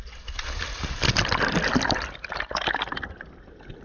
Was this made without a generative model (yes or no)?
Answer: yes